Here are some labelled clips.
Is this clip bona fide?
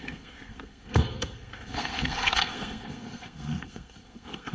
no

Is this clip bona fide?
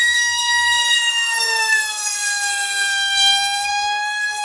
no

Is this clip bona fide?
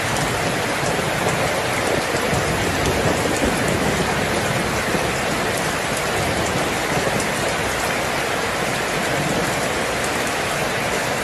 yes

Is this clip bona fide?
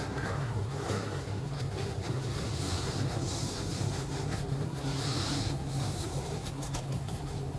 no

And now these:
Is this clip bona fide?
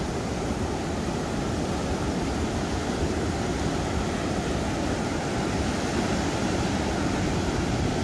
yes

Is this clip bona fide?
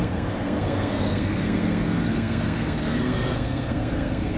no